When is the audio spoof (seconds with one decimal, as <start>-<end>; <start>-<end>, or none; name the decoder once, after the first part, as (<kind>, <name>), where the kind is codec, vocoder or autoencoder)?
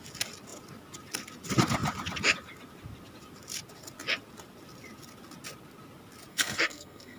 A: 6.3-7.2 (codec, SNAC)